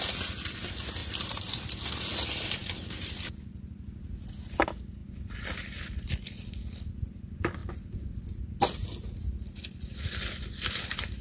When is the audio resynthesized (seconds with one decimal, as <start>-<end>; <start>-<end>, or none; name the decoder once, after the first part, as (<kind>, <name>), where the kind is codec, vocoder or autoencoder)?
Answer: 1.0-1.9 (vocoder, BigVGAN v2); 7.6-8.6